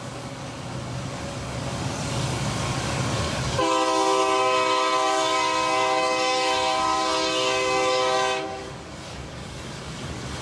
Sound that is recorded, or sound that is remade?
remade